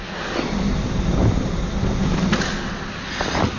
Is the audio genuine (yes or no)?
yes